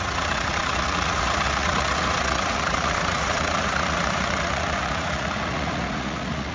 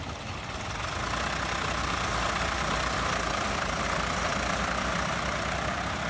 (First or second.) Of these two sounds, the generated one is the first